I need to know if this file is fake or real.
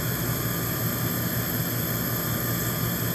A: real